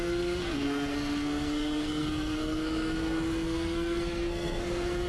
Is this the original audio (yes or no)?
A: no